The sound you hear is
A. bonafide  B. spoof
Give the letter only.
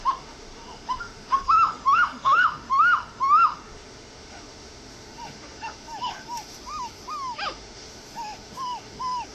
B